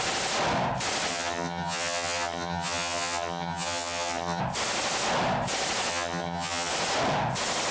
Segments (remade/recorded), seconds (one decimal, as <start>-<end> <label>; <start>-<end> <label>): 0.0-1.1 recorded; 1.1-4.4 remade; 4.4-5.9 recorded; 5.9-6.7 remade; 6.7-7.7 recorded